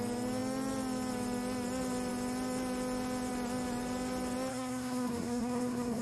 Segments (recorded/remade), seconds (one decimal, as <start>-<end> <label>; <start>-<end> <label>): 0.0-4.5 recorded; 4.5-6.0 remade